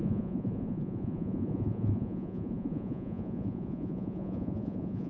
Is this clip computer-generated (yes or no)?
yes